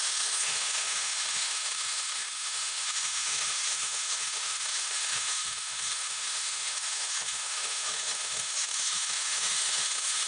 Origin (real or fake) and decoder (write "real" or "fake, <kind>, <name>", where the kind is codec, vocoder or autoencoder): fake, autoencoder, DAC-VAE